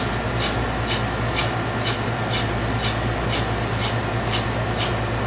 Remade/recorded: recorded